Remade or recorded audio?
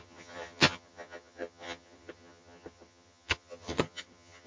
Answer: remade